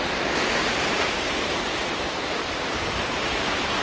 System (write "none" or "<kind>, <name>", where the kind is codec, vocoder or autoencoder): vocoder, BigVGAN v2